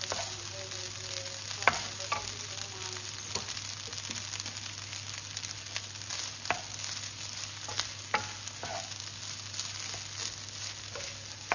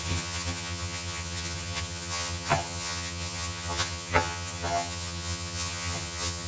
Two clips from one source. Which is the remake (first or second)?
second